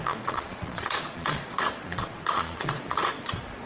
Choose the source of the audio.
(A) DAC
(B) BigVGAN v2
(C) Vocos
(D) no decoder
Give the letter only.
C